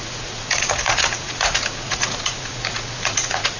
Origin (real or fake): fake